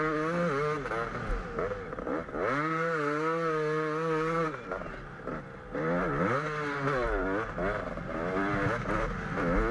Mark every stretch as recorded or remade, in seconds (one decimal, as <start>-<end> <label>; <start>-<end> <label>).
0.0-9.7 recorded